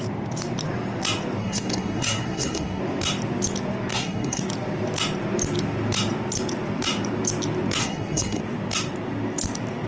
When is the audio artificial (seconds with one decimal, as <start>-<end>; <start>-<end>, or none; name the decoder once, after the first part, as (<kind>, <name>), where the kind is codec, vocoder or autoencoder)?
1.4-2.8 (codec, SNAC); 3.9-4.4; 7.8-8.4